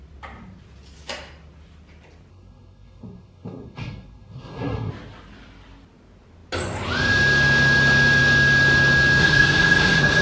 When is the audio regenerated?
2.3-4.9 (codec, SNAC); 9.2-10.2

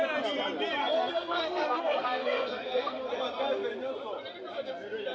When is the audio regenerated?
0.8-3.1 (codec, SNAC)

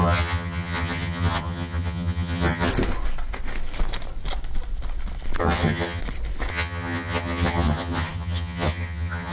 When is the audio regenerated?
0.0-2.7 (vocoder, HiFi-GAN); 5.4-6.0; 6.5-9.3

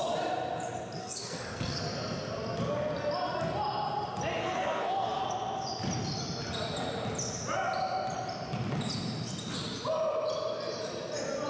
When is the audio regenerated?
1.0-1.8 (codec, SNAC); 4.4-5.2